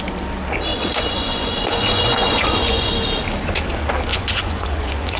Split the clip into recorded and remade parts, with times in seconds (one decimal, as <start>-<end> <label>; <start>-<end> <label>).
0.0-0.7 recorded; 0.7-2.9 remade; 2.9-4.1 recorded; 4.1-5.2 remade

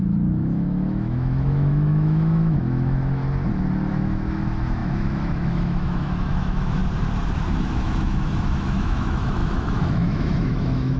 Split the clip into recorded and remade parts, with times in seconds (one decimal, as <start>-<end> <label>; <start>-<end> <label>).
0.0-3.2 remade; 3.2-3.9 recorded; 3.9-6.8 remade; 6.8-7.5 recorded; 7.5-11.0 remade

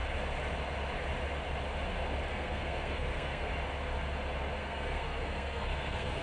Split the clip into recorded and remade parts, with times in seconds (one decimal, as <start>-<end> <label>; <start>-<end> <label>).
0.0-2.3 recorded; 2.3-3.5 remade; 3.5-4.6 recorded; 4.6-6.2 remade

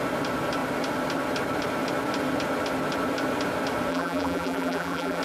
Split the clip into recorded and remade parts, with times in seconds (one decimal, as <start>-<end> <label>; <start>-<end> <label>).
0.0-3.9 recorded; 3.9-5.2 remade

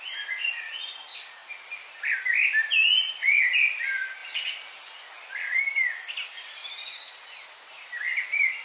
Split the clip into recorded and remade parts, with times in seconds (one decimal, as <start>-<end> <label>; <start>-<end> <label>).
0.0-8.6 recorded